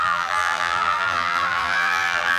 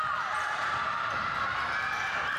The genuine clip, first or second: second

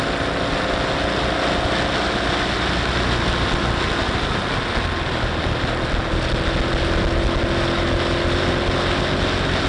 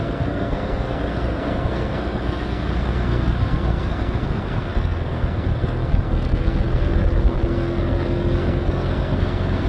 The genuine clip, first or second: first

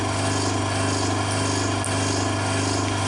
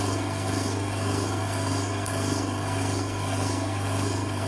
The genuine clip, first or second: first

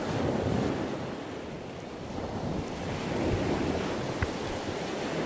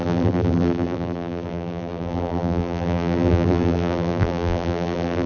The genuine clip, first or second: first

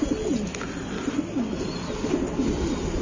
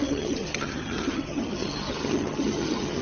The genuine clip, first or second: first